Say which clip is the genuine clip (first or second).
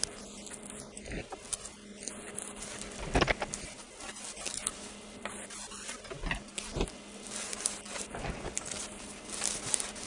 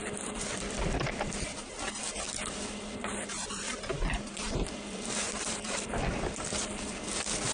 first